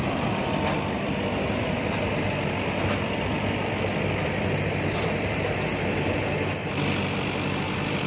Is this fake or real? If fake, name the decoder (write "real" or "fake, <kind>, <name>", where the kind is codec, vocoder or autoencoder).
real